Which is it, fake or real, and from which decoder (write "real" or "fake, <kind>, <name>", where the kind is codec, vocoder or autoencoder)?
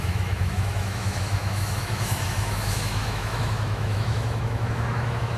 fake, autoencoder, DAC-VAE